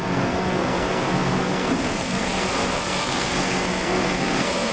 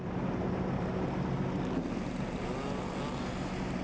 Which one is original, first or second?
second